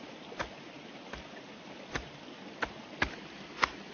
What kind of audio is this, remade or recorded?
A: recorded